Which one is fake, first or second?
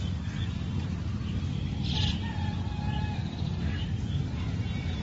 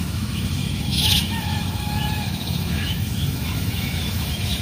second